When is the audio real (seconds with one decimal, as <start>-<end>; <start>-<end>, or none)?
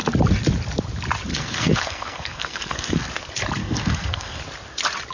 0.0-1.3; 3.1-3.6; 4.4-5.1